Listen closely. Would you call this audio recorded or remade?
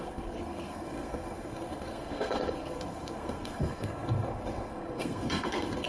remade